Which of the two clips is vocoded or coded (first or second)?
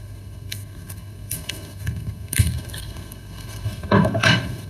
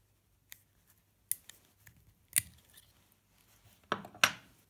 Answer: first